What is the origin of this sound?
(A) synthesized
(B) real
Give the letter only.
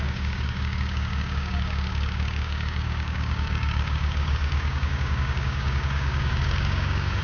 A